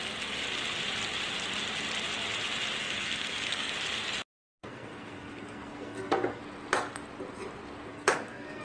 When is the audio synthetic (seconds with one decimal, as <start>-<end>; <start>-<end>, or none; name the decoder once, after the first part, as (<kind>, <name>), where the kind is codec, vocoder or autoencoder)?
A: 2.8-3.7 (codec, SNAC); 4.6-6.4; 7.9-8.6